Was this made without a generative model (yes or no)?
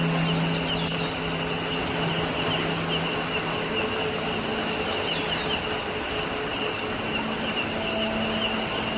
yes